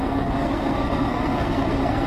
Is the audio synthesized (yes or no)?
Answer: yes